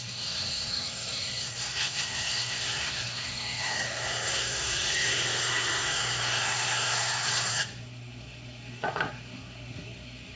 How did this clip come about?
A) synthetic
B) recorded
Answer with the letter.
A